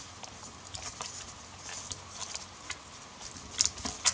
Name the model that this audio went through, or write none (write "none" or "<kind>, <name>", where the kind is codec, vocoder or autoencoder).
none